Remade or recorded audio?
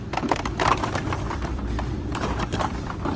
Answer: remade